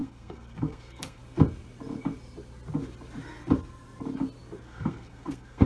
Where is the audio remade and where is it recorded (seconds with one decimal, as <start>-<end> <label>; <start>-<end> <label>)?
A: 0.0-1.2 remade; 1.2-4.6 recorded; 4.6-5.7 remade